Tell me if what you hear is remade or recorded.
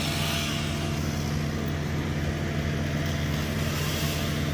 recorded